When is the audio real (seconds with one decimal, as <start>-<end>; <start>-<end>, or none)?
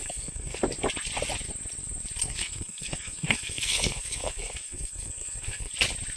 0.6-2.2; 5.7-6.2